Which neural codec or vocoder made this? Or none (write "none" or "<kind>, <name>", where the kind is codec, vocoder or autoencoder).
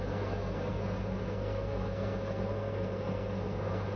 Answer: codec, SNAC